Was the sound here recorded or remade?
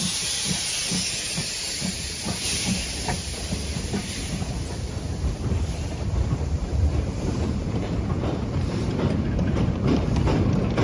remade